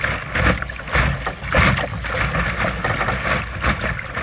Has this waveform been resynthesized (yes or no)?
no